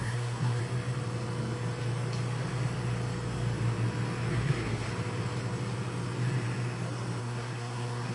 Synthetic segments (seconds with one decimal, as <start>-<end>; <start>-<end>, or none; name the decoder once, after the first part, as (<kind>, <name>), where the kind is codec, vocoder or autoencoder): 0.0-0.6 (codec, SNAC); 4.3-4.9; 7.2-8.1